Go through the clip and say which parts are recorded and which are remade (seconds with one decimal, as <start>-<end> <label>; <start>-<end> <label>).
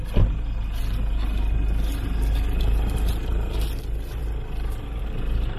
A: 0.0-5.6 recorded